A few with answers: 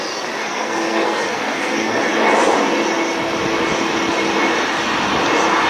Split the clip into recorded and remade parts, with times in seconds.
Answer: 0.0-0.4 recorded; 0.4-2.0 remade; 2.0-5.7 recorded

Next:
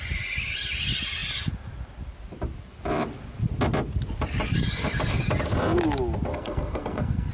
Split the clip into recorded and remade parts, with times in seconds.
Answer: 0.0-6.3 recorded; 6.3-7.3 remade